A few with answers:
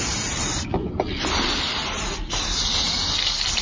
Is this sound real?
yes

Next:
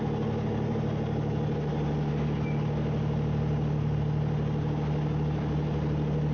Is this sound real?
yes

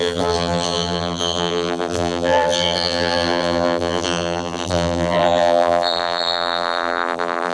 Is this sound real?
no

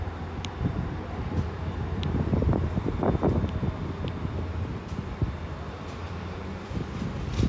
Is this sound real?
no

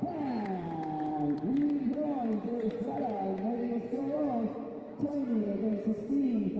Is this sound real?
no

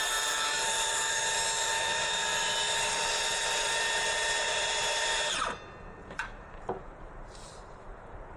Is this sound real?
no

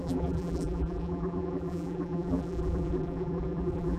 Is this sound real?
no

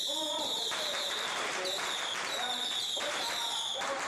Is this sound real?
no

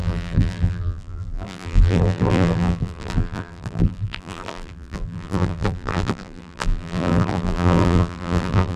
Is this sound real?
no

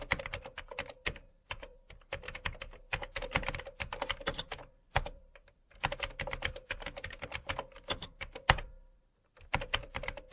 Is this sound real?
no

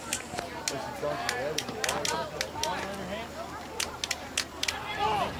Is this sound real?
yes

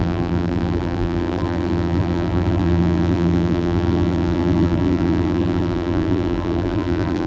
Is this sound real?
no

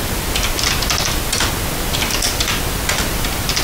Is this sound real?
yes